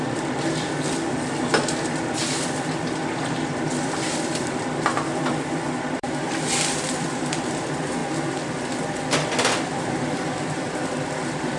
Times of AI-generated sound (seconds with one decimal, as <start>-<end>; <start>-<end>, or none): 0.0-8.0; 9.1-11.6